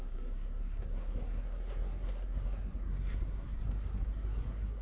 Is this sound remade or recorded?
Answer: remade